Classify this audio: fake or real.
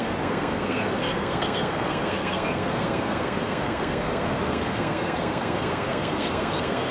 fake